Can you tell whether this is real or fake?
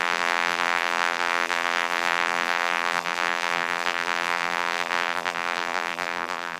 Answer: fake